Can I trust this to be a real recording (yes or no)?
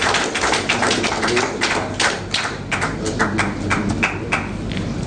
yes